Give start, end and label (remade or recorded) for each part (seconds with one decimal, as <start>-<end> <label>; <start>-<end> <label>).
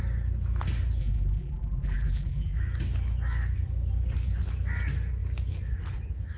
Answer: 0.0-1.0 recorded; 1.0-2.6 remade; 2.6-6.4 recorded